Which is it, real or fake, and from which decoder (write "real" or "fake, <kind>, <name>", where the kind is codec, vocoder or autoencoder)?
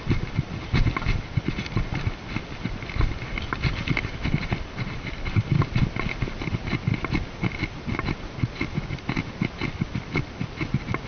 real